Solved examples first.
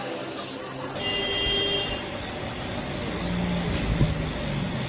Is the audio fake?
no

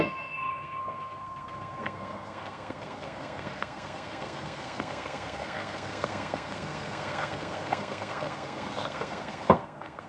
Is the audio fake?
yes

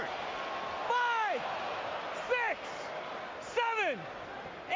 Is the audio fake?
no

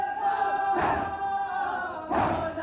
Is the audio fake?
no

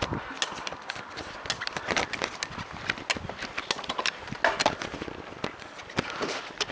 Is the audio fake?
no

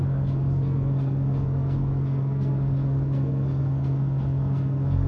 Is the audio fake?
yes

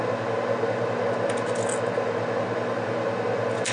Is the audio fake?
no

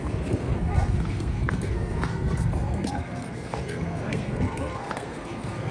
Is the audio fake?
yes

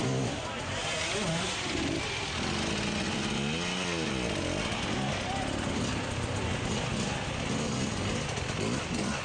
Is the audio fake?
no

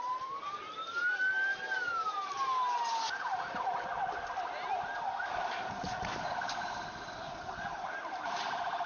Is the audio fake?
no